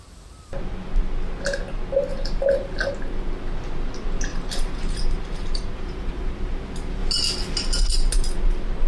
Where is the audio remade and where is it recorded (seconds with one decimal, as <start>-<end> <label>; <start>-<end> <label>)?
0.0-2.1 recorded; 2.1-2.8 remade; 2.8-4.3 recorded; 4.3-6.1 remade; 6.1-8.9 recorded